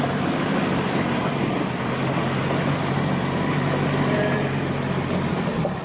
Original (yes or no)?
no